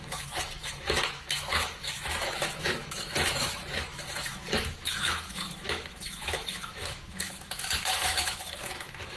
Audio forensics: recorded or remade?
remade